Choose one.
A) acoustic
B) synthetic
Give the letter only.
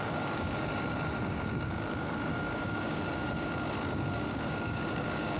B